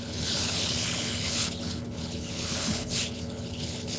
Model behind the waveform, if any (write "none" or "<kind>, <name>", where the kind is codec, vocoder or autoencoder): codec, HILCodec